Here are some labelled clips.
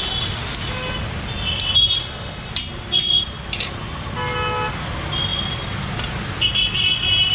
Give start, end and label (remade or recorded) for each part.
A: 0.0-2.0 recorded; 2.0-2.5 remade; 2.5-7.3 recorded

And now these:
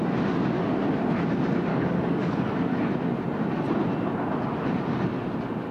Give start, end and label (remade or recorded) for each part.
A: 0.0-1.7 recorded; 1.7-2.9 remade; 2.9-5.7 recorded

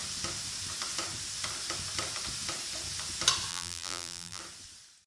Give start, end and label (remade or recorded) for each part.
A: 0.0-3.5 recorded; 3.5-4.4 remade; 4.4-5.1 recorded

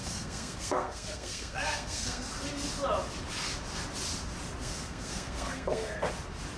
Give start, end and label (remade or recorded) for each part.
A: 0.0-2.3 remade; 2.3-4.6 recorded; 4.6-6.1 remade; 6.1-6.6 recorded

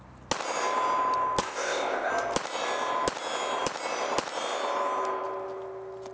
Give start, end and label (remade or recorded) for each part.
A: 0.0-1.4 recorded; 1.4-2.1 remade; 2.1-6.1 recorded

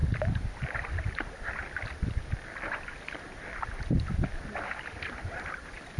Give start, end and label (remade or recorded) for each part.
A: 0.0-6.0 recorded